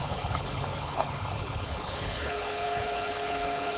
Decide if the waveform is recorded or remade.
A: remade